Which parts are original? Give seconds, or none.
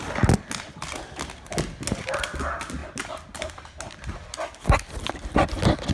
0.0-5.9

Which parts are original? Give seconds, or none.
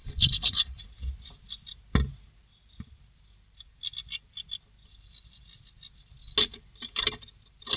0.8-7.8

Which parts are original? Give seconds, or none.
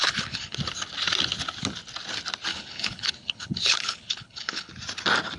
0.6-2.5; 4.7-5.4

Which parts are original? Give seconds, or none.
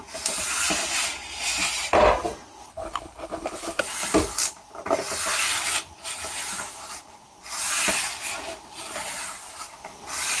0.0-2.7; 3.8-10.4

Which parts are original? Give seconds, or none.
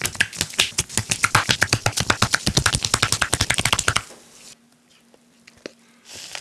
0.0-6.4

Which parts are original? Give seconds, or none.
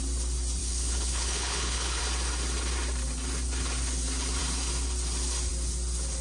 0.0-0.6; 2.0-6.2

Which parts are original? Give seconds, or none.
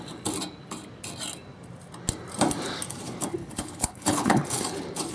0.0-3.4; 4.4-5.1